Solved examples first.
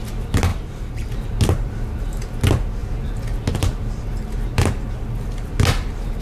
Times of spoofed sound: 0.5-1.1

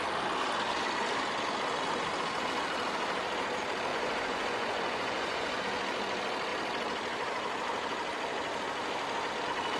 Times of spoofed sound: 3.9-5.6